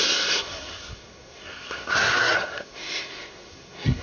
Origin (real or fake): fake